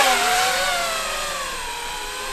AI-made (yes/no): no